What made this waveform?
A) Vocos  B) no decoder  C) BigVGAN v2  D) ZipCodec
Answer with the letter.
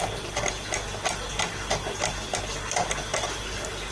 B